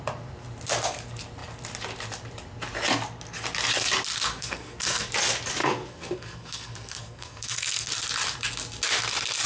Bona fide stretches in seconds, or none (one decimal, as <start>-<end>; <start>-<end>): 0.0-4.3; 5.1-5.6; 7.9-9.5

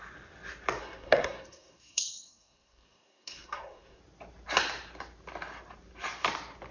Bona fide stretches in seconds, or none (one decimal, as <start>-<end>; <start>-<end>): 0.0-0.8; 4.0-6.7

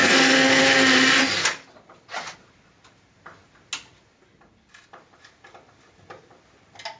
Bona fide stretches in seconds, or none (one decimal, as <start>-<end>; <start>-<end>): 0.6-7.0

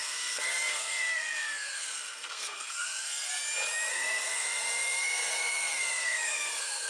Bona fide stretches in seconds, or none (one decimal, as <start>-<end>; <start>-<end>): 3.3-3.9

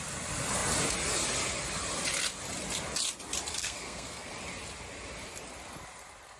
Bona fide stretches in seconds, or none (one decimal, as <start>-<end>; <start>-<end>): 0.0-3.6; 4.3-6.4

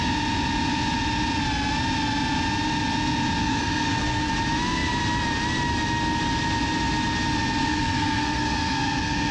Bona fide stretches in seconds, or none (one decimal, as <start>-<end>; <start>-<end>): 0.0-3.4; 4.3-7.6

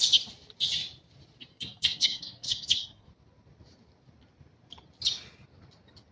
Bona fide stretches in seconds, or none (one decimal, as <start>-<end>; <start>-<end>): 0.0-1.5; 3.1-6.1

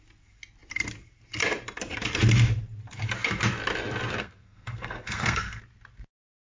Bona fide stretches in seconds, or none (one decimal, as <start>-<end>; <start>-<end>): 0.0-4.2; 5.6-6.4